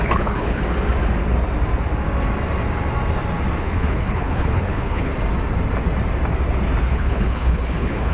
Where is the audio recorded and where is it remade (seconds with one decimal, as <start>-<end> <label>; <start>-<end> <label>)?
0.0-0.6 remade; 0.6-3.6 recorded; 3.6-5.1 remade; 5.1-6.8 recorded; 6.8-8.1 remade